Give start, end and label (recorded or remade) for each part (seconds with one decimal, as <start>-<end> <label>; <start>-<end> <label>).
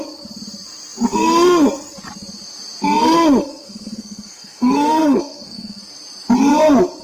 0.0-3.4 recorded; 3.4-5.8 remade; 5.8-7.0 recorded